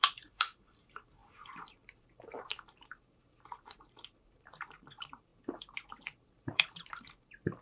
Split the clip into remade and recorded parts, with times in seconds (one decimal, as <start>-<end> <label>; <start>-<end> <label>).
0.0-1.2 remade; 1.2-2.0 recorded; 2.0-5.3 remade; 5.3-6.0 recorded; 6.0-7.6 remade